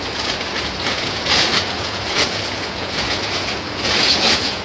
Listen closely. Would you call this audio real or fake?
fake